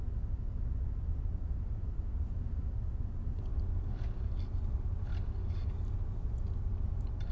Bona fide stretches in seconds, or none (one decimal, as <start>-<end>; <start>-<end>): 0.0-5.4; 6.0-7.3